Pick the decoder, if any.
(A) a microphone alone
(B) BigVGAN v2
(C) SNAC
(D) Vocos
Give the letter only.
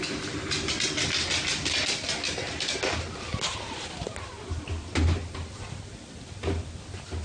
A